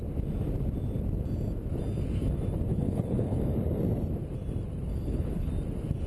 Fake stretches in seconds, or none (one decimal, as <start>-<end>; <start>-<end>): 2.7-3.4; 4.9-5.5